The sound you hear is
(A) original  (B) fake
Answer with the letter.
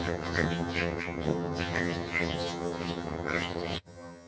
B